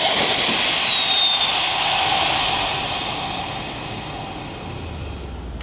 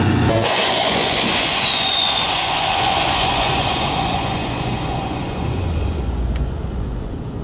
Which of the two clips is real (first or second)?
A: first